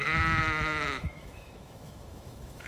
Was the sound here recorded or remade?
remade